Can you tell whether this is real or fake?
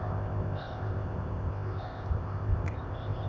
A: fake